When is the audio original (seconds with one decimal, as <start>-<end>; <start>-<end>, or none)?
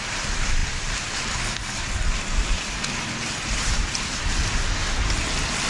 4.8-5.7